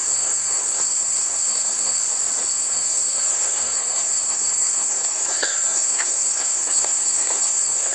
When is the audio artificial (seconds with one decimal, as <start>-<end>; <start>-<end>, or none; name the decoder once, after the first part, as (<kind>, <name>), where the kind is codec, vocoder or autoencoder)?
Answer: 0.0-2.0 (codec, SNAC); 2.5-7.9